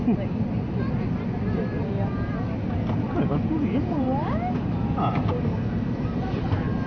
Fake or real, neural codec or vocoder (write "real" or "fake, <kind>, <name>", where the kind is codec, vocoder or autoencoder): real